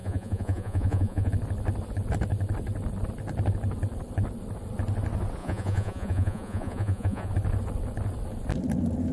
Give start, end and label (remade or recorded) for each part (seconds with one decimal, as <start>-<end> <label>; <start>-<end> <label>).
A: 0.0-1.3 remade; 1.3-5.4 recorded; 5.4-7.3 remade; 7.3-9.1 recorded